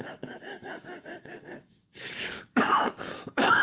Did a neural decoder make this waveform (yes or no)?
yes